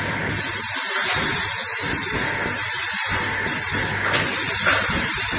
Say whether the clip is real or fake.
real